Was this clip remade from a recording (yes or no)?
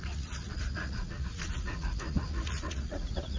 yes